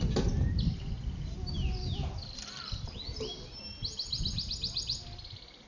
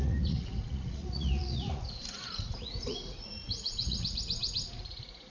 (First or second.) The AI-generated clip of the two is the second